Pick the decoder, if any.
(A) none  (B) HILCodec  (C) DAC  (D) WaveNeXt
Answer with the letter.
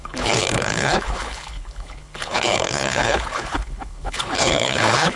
B